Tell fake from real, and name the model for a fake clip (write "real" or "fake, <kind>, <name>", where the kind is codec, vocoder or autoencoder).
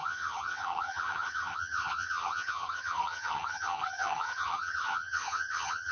fake, vocoder, HiFi-GAN